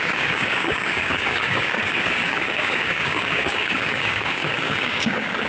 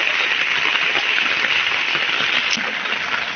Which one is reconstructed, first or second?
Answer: first